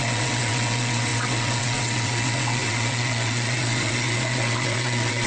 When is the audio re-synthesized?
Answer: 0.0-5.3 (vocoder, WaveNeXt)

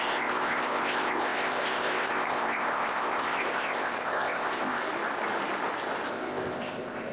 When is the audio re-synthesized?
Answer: 0.0-4.8 (codec, ZipCodec); 6.1-7.1

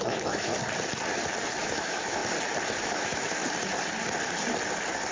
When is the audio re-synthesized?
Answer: 0.0-0.5 (autoencoder, DAC-VAE); 1.6-2.2; 2.8-3.4

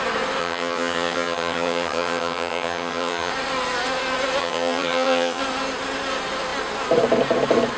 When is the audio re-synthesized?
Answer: 0.4-3.3 (vocoder, HiFi-GAN); 4.4-5.4

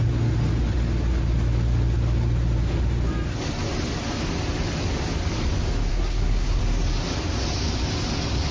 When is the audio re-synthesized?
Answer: 5.9-6.6 (codec, SNAC)

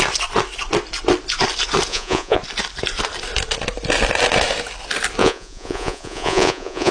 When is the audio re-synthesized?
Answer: 1.9-2.4 (vocoder, Vocos); 5.2-6.9

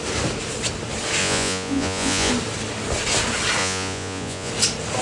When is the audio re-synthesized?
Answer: 1.2-2.3 (vocoder, Vocos); 3.6-4.5